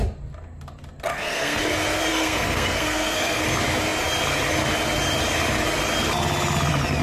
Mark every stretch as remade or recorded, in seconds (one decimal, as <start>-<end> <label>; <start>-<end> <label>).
0.0-1.1 recorded; 1.1-1.6 remade; 1.6-2.1 recorded; 2.1-3.4 remade; 3.4-7.0 recorded